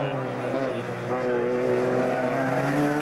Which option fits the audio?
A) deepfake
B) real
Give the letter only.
B